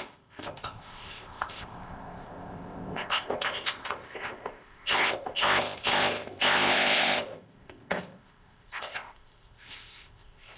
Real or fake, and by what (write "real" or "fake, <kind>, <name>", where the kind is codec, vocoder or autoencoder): fake, codec, ZipCodec